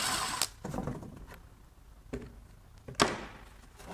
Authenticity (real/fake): real